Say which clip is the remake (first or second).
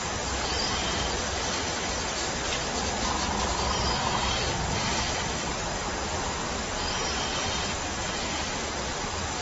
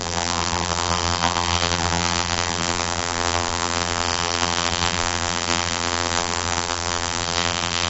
second